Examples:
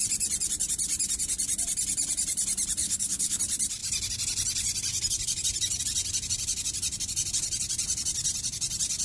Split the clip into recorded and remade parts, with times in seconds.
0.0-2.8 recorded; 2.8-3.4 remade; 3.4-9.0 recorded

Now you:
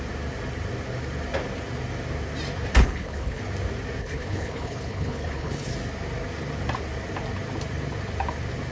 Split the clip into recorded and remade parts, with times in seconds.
0.0-2.8 recorded; 2.8-3.4 remade; 3.4-4.0 recorded; 4.0-5.7 remade; 5.7-8.7 recorded